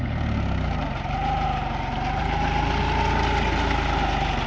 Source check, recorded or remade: recorded